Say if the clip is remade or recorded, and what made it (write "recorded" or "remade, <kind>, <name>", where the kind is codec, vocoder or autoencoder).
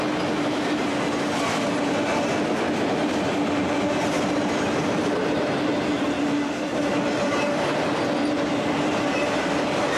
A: recorded